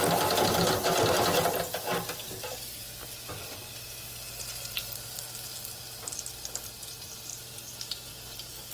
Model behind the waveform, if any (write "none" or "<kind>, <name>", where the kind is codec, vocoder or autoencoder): none